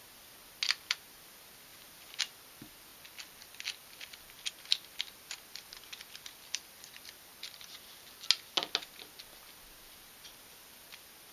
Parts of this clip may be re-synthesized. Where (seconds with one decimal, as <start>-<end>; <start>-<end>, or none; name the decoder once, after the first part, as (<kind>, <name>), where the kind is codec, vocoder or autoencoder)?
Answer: 2.9-4.5 (vocoder, BigVGAN v2)